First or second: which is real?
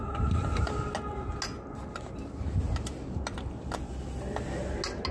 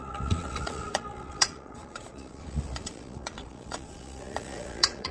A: first